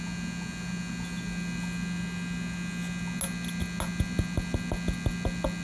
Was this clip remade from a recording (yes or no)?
no